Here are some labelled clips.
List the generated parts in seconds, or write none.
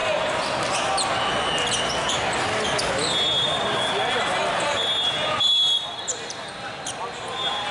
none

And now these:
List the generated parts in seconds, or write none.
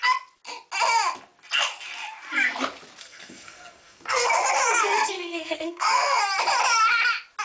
3.0-4.3 (codec, SNAC); 4.8-6.2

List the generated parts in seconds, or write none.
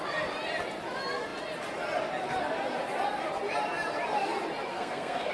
4.7-5.3 (codec, SNAC)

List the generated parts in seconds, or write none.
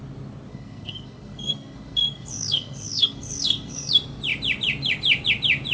0.5-3.9 (codec, SNAC)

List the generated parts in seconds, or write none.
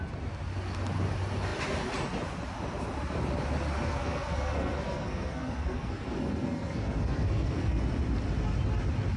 3.9-7.8 (codec, SNAC)